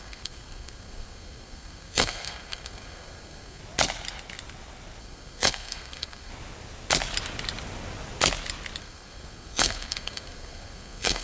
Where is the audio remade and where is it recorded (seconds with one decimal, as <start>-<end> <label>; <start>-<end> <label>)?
0.0-3.6 remade; 3.6-5.0 recorded; 5.0-6.3 remade; 6.3-8.8 recorded; 8.8-11.2 remade